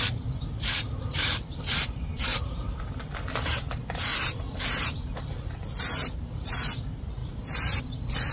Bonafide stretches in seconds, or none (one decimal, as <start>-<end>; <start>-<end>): 0.0-2.3; 3.1-4.1; 5.2-7.2; 7.8-8.3

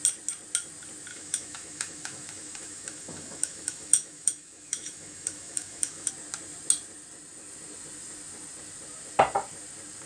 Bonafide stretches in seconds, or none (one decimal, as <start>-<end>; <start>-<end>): 0.0-1.1; 6.1-10.1

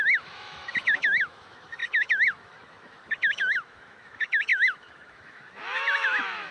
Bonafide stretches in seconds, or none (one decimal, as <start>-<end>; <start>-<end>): none

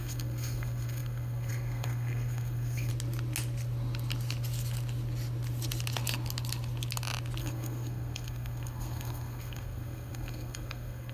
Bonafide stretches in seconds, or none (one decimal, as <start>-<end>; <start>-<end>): 2.9-7.4

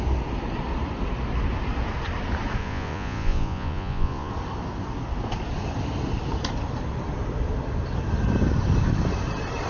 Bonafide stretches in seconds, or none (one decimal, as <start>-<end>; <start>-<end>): 0.0-2.6; 4.3-9.7

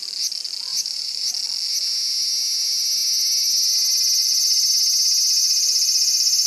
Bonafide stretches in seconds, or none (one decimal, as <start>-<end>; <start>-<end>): 0.0-0.7; 1.3-4.2; 4.7-5.4

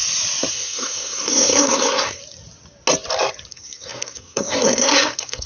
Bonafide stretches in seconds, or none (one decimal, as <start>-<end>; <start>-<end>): 0.0-0.5; 2.2-3.5